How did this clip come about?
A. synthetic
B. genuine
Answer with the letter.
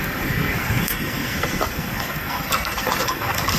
A